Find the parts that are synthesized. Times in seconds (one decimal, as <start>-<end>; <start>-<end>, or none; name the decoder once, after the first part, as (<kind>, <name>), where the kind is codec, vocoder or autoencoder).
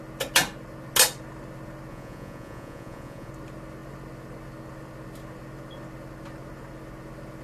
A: 1.9-3.3 (vocoder, Vocos)